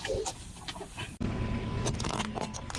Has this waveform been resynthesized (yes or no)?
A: no